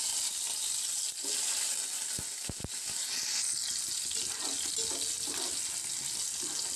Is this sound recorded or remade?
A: recorded